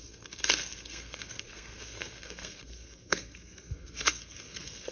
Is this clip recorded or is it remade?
remade